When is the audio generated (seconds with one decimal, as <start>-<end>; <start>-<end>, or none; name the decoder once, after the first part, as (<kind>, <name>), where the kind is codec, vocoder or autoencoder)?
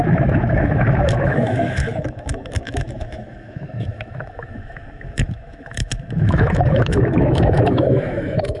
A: 0.0-8.6 (autoencoder, DAC-VAE)